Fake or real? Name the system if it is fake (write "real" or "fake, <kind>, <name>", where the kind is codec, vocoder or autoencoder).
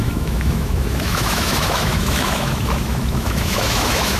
fake, autoencoder, DAC-VAE